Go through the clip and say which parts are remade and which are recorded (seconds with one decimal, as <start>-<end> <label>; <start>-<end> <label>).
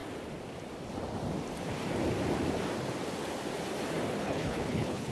0.0-4.2 recorded; 4.2-5.1 remade